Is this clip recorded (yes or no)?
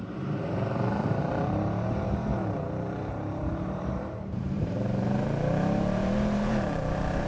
no